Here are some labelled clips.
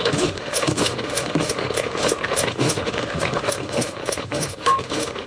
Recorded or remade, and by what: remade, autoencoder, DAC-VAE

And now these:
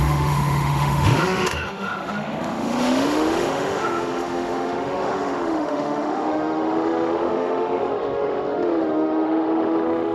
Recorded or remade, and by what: remade, autoencoder, DAC-VAE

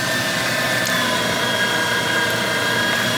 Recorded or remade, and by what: recorded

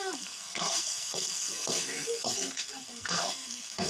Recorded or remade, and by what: remade, codec, SNAC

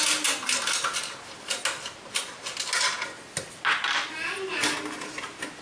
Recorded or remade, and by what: recorded